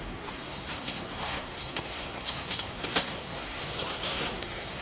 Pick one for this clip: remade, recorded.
remade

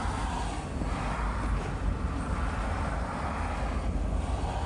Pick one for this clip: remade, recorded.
recorded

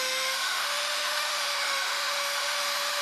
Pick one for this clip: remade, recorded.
remade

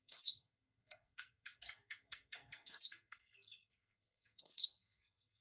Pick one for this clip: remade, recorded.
remade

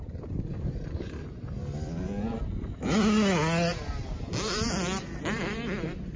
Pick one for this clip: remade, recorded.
recorded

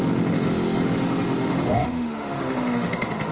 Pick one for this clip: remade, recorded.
remade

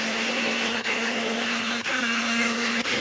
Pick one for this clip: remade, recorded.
remade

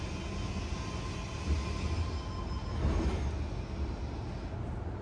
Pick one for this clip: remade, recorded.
recorded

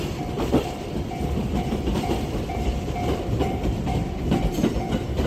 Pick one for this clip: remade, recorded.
remade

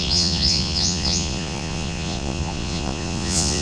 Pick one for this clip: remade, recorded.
remade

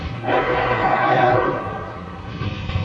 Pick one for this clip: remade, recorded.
remade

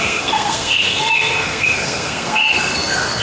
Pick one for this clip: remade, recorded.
remade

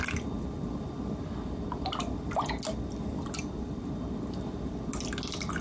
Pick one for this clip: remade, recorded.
recorded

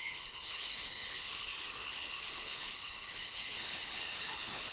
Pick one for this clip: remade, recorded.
remade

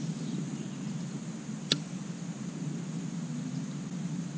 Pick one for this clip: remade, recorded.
recorded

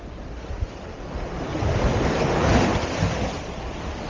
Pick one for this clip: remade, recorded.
recorded